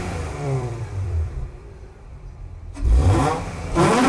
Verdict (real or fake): fake